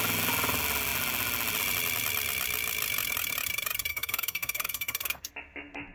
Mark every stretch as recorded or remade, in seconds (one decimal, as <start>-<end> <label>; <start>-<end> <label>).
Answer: 0.0-3.9 recorded; 3.9-5.3 remade; 5.3-5.9 recorded